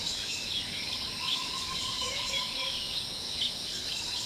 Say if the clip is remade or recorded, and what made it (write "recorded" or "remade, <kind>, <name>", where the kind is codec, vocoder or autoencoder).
remade, codec, DAC